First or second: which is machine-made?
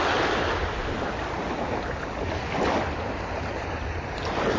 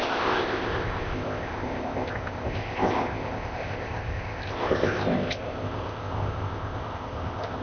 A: second